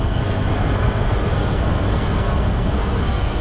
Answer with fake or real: fake